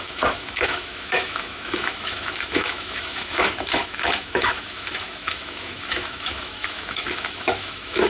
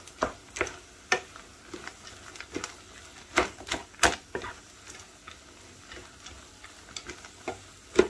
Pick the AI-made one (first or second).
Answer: first